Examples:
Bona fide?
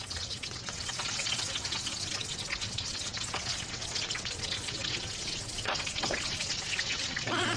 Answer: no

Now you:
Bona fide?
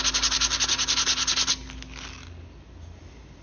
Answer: yes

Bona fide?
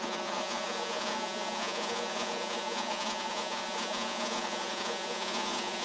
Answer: no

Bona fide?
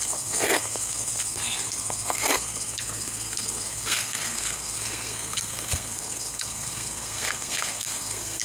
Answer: no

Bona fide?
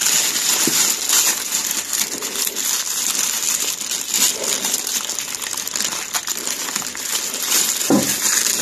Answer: yes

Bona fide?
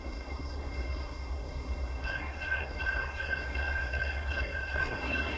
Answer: no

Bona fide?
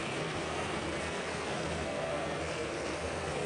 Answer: no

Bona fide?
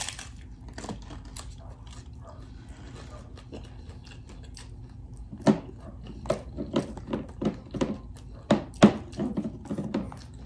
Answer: yes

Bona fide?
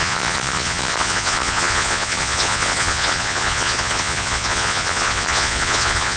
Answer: no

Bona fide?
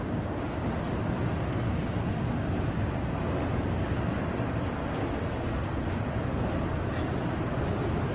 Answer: yes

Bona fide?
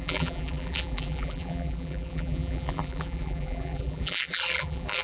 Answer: no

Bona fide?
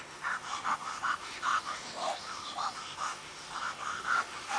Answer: no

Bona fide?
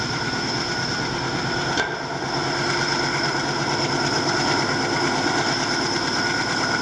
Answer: yes